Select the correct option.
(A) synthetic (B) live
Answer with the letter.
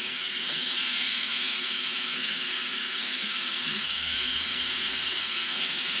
A